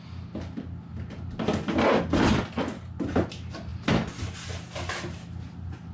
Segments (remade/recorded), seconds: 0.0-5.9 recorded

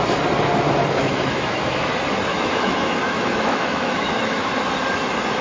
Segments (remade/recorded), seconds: 0.0-1.0 recorded; 1.0-1.9 remade; 1.9-2.3 recorded; 2.3-4.5 remade; 4.5-5.4 recorded